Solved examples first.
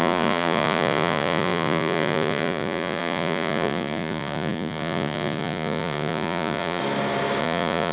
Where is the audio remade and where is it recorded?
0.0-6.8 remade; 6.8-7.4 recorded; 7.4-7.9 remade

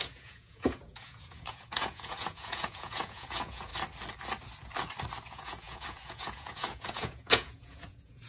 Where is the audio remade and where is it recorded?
0.0-3.7 remade; 3.7-5.3 recorded; 5.3-8.3 remade

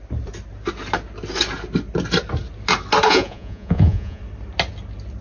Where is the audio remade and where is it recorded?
0.0-3.1 recorded; 3.1-4.2 remade; 4.2-5.2 recorded

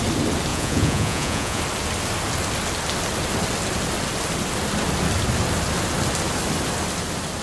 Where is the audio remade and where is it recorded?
0.0-0.5 recorded; 0.5-1.6 remade; 1.6-7.4 recorded

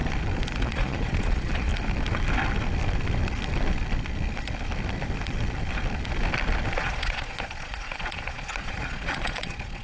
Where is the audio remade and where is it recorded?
0.0-0.6 recorded; 0.6-1.7 remade; 1.7-6.8 recorded; 6.8-9.8 remade

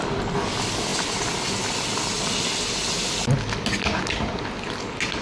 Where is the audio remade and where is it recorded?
0.0-5.2 recorded